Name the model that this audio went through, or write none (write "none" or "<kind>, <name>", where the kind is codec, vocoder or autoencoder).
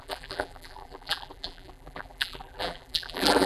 vocoder, BigVGAN v2